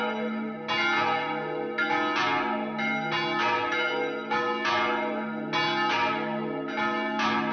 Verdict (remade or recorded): recorded